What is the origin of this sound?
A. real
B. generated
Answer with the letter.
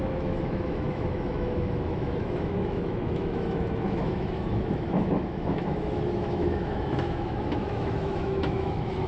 B